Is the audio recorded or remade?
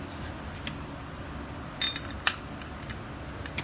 recorded